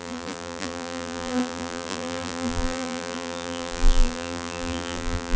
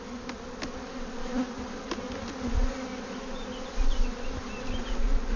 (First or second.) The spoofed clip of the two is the first